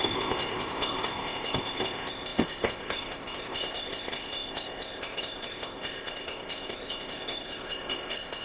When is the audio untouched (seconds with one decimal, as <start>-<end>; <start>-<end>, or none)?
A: none